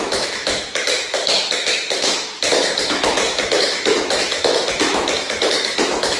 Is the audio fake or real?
fake